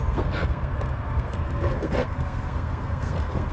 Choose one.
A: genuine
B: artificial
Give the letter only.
B